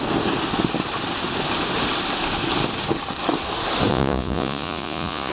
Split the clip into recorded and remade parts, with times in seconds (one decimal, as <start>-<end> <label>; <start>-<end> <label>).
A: 0.0-3.9 recorded; 3.9-5.3 remade